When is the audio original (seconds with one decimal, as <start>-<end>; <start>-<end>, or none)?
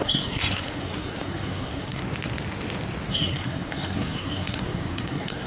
2.0-3.1